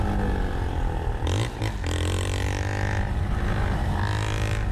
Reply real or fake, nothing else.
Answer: real